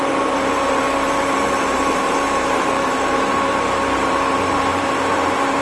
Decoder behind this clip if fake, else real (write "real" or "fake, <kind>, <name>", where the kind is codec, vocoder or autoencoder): fake, vocoder, BigVGAN v2